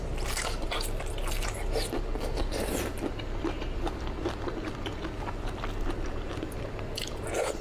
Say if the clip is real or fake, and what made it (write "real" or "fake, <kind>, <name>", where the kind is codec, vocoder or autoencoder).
fake, vocoder, BigVGAN v2